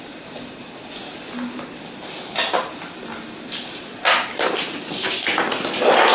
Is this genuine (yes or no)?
yes